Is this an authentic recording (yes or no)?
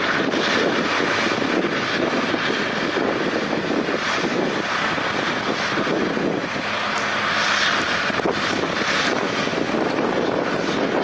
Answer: yes